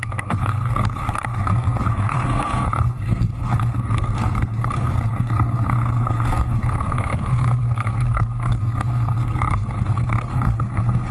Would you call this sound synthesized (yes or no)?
yes